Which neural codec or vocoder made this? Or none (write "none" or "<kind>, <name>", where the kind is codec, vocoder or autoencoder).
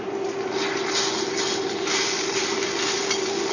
none